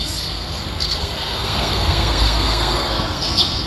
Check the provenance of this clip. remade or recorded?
remade